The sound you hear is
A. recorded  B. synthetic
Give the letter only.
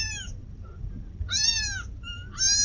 A